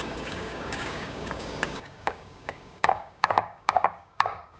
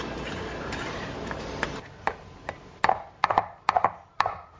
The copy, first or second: first